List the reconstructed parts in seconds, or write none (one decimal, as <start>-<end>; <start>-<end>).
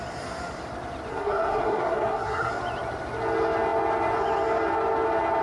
1.1-2.5